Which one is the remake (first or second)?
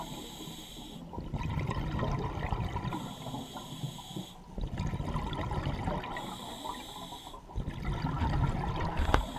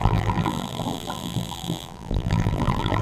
second